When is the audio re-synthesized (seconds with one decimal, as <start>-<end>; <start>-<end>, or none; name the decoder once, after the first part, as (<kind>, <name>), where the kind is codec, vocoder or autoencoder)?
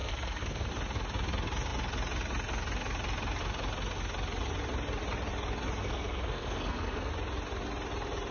0.0-0.7 (codec, SNAC); 5.8-7.1